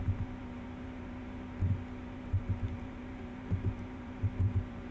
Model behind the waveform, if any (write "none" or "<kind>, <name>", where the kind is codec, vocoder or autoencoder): vocoder, BigVGAN v2